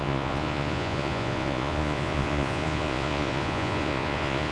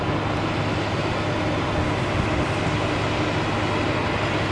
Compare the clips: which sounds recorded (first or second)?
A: second